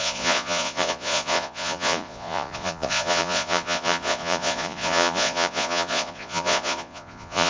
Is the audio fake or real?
fake